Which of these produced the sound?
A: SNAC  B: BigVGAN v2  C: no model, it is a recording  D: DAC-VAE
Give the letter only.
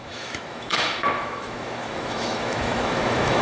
D